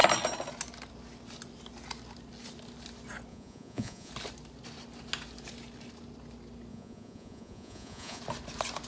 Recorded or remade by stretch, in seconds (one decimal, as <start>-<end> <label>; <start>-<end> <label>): 0.0-3.3 recorded; 3.3-4.1 remade; 4.1-6.7 recorded; 6.7-8.2 remade; 8.2-8.9 recorded